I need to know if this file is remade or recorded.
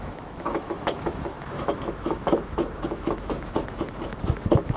remade